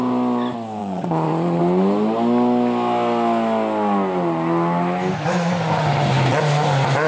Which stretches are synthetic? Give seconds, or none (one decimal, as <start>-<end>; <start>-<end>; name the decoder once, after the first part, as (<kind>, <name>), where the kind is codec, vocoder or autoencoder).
0.8-1.6 (vocoder, Vocos)